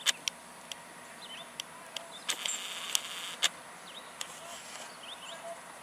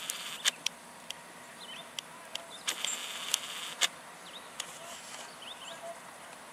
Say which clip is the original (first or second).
first